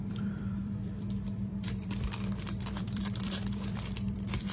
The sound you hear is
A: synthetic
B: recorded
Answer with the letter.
A